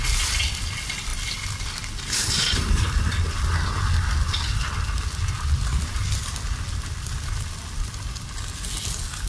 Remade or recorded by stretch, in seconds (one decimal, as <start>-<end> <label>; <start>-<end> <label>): 0.0-9.3 recorded

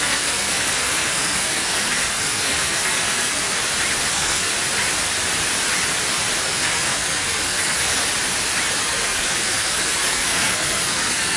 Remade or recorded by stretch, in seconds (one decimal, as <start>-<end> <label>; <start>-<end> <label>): 0.0-3.6 remade; 3.6-4.1 recorded; 4.1-4.5 remade; 4.5-6.4 recorded; 6.4-8.0 remade; 8.0-8.8 recorded; 8.8-11.4 remade

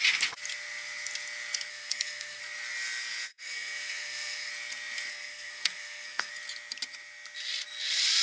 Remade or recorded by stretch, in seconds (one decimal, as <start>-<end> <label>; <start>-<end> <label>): 0.0-1.7 recorded; 1.7-2.4 remade; 2.4-3.3 recorded; 3.3-4.5 remade; 4.5-5.1 recorded; 5.1-6.3 remade; 6.3-8.2 recorded

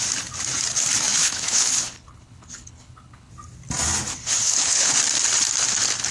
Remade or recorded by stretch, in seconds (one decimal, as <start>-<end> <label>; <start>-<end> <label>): 0.0-1.1 recorded; 1.1-3.3 remade; 3.3-4.1 recorded; 4.1-5.0 remade; 5.0-6.1 recorded

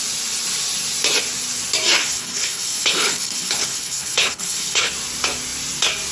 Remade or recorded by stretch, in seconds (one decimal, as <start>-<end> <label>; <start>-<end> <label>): 0.0-2.0 recorded; 2.0-4.9 remade; 4.9-6.1 recorded